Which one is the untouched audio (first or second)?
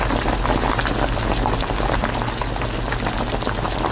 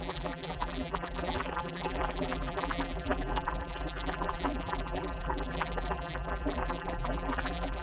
first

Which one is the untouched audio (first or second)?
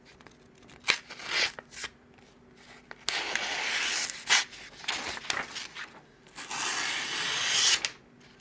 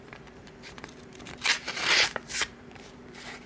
first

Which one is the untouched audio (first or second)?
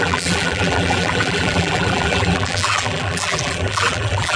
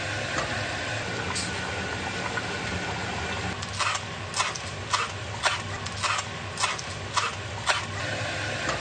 second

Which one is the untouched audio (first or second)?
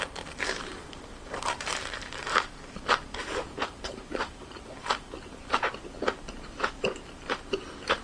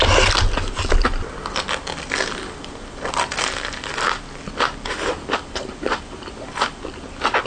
second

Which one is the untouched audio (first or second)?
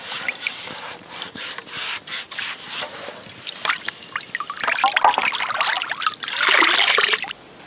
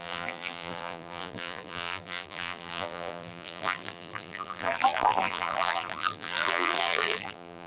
first